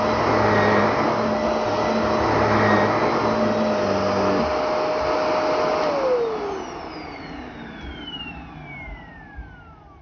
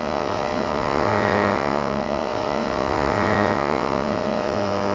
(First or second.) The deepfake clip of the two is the second